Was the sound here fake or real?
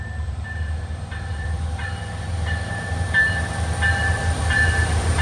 fake